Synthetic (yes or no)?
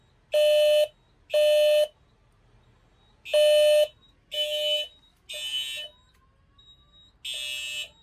no